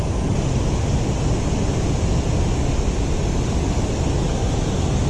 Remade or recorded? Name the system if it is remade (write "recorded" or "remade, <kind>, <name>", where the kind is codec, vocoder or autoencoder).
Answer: recorded